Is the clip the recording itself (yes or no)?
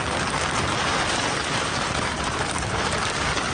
no